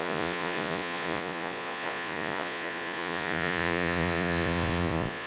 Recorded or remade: remade